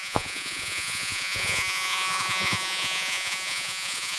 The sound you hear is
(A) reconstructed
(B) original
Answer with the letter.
A